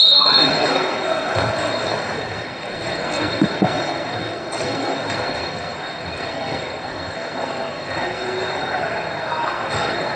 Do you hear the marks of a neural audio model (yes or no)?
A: yes